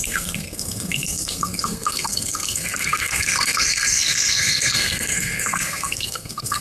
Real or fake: fake